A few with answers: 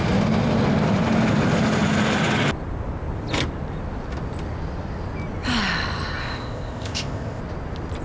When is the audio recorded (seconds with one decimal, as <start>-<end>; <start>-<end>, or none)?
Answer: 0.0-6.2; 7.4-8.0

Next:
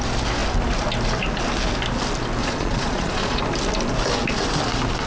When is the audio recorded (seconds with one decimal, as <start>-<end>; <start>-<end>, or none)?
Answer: 0.0-2.4; 3.4-5.1

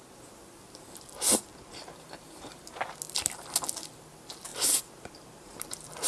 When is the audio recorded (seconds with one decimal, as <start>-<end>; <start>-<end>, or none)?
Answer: 0.0-6.1

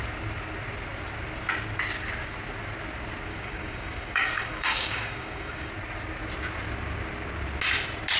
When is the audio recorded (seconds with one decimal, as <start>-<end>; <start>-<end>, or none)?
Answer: 0.0-3.3; 5.7-8.2

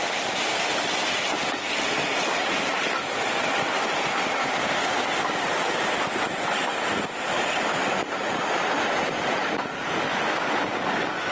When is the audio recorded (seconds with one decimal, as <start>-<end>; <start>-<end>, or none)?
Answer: 0.0-11.3

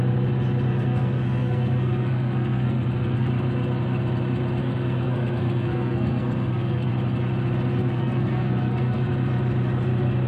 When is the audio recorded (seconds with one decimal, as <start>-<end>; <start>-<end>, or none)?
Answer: 0.0-0.7; 3.3-4.6; 6.9-7.8; 9.1-10.3

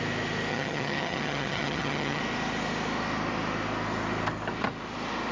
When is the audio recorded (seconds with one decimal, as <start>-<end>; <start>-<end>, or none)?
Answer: 0.0-0.5; 2.2-5.3

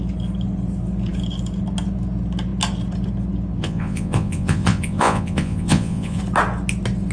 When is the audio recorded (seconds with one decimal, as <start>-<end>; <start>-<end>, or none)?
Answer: 0.0-3.6; 6.2-7.1